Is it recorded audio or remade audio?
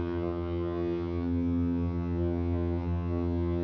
remade